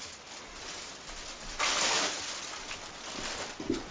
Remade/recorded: recorded